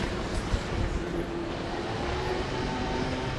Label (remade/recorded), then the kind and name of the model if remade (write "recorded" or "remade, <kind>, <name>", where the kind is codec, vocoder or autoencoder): remade, vocoder, BigVGAN v2